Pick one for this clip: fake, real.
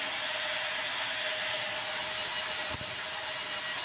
real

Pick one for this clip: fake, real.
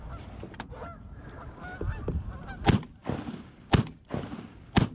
real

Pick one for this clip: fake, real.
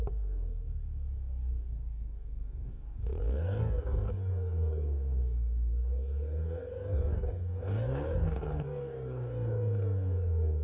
fake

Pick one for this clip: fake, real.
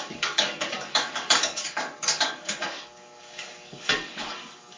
fake